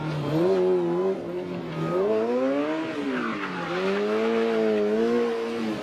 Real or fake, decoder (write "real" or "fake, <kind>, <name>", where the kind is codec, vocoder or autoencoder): real